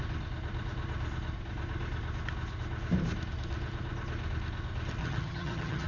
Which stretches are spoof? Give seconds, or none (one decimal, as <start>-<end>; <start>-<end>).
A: 5.0-5.9